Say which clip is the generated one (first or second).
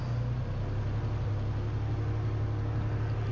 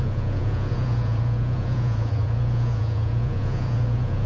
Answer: second